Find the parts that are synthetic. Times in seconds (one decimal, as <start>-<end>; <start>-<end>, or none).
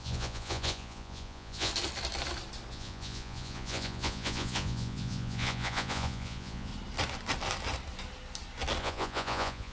0.0-1.7; 2.7-6.7; 8.8-9.7